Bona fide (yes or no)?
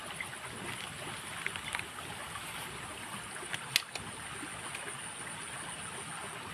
yes